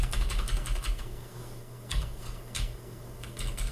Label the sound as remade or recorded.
remade